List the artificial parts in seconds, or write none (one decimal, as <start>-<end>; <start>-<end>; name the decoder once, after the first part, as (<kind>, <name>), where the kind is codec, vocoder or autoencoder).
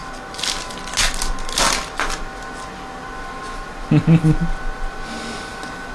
none